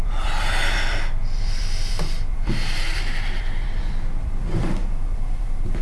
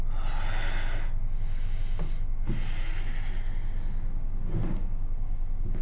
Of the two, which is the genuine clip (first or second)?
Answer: second